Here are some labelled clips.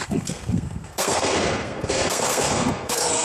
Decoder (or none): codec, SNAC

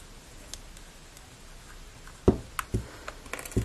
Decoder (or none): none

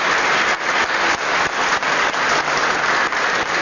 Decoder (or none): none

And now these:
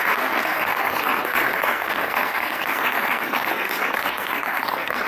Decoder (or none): codec, SNAC